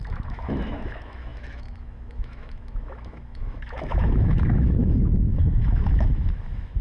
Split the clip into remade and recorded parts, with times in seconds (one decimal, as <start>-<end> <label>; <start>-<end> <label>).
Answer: 0.0-6.8 remade